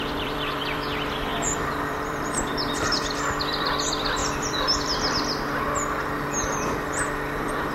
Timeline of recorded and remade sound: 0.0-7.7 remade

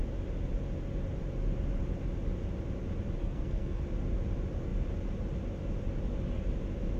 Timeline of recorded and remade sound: 0.0-3.2 recorded; 3.2-3.8 remade; 3.8-7.0 recorded

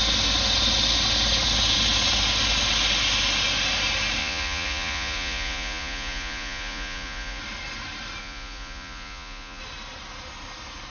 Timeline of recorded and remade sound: 0.0-4.2 recorded; 4.2-7.4 remade; 7.4-8.2 recorded; 8.2-9.6 remade; 9.6-10.9 recorded

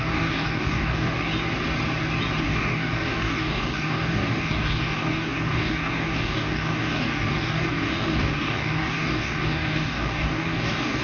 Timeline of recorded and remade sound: 0.0-1.3 remade; 1.3-2.4 recorded; 2.4-11.0 remade

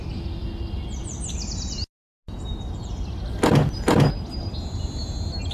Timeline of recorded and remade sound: 0.0-5.5 recorded

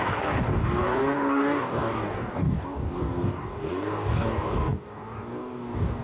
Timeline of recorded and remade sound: 0.0-6.0 remade

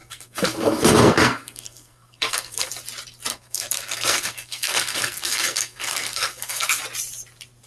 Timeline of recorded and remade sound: 0.0-2.7 remade; 2.7-3.3 recorded; 3.3-6.8 remade; 6.8-7.7 recorded

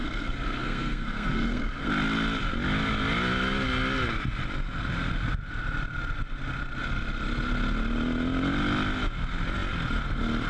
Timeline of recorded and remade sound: 0.0-1.9 remade; 1.9-10.5 recorded